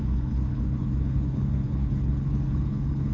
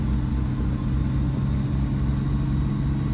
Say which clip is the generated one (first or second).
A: first